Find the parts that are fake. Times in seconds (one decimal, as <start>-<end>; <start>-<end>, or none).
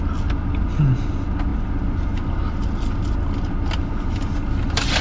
none